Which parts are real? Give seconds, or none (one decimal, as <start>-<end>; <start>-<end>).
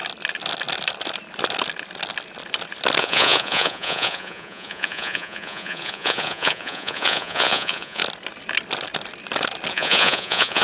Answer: 0.0-3.0; 8.0-9.7